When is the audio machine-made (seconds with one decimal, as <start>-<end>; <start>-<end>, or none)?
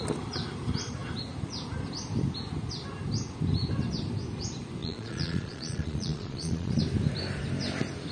4.8-6.8